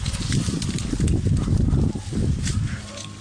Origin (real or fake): real